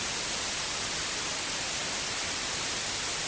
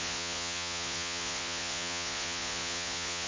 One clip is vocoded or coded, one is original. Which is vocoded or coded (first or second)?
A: second